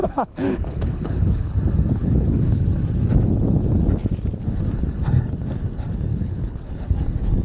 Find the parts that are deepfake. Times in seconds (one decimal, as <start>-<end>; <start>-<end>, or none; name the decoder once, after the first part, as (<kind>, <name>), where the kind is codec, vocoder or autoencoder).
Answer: 0.0-1.5 (codec, HILCodec); 2.0-2.6; 6.1-6.7